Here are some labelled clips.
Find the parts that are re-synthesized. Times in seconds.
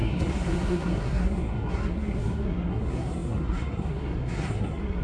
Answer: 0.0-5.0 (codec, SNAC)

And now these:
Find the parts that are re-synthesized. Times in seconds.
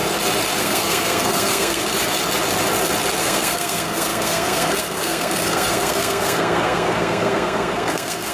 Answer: 0.6-1.8 (codec, SNAC); 3.2-8.3